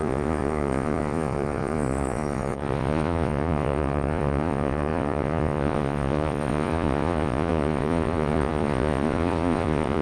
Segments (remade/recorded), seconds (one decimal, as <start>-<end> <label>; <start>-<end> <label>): 0.0-10.0 remade